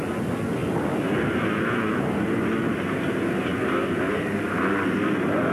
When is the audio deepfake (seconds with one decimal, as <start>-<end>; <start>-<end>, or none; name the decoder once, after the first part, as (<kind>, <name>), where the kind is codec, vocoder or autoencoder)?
3.5-4.1 (vocoder, BigVGAN v2)